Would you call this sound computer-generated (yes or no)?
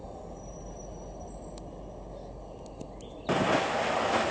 no